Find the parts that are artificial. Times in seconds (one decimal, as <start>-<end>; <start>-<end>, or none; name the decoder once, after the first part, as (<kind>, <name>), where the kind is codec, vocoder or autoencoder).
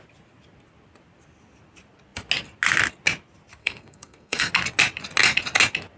3.6-4.5 (codec, SNAC)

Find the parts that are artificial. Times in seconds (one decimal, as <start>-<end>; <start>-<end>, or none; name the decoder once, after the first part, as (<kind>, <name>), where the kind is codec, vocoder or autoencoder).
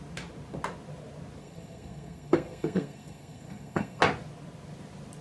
1.4-4.0 (codec, SNAC)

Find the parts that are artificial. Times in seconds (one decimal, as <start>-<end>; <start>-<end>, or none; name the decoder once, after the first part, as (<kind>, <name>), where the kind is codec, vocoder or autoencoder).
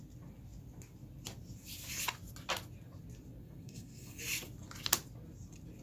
3.4-4.2 (codec, SNAC)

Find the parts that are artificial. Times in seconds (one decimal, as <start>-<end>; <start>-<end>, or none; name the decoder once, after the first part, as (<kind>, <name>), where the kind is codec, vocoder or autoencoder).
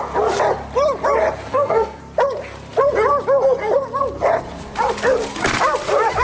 1.5-2.0 (codec, SNAC)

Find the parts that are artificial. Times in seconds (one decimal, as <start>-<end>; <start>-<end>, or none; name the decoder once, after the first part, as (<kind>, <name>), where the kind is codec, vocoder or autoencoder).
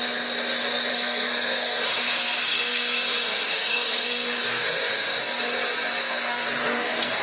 0.9-5.2 (codec, SNAC); 6.0-7.2